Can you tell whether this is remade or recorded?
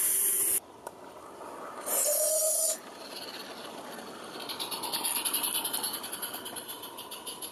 recorded